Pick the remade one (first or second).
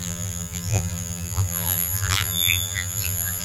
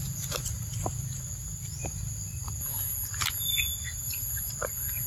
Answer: first